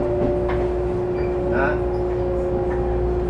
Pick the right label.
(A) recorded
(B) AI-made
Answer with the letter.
A